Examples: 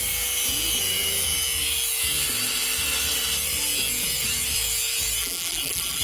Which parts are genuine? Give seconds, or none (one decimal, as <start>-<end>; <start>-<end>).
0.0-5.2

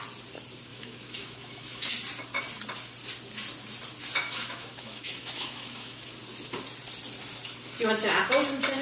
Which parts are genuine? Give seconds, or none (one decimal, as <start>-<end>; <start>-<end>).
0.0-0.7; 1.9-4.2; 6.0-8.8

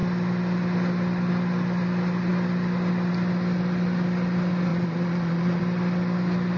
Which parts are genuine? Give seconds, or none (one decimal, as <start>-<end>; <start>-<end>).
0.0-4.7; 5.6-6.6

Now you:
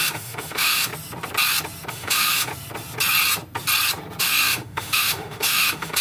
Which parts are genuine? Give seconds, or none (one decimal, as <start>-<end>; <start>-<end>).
0.9-1.9; 2.5-4.2

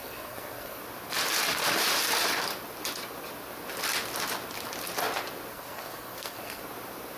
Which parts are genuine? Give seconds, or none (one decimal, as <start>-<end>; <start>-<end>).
0.8-5.5; 6.6-7.2